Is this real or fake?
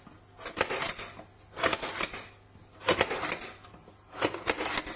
real